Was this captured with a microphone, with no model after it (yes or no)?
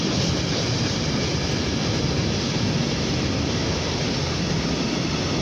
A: yes